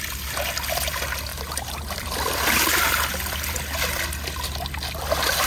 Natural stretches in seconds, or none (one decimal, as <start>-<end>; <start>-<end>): 0.0-1.3; 4.0-5.5